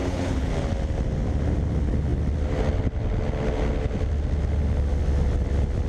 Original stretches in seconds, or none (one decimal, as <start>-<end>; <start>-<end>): 0.5-5.9